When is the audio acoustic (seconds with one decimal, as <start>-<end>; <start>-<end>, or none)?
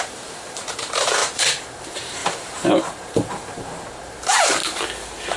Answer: 4.6-5.4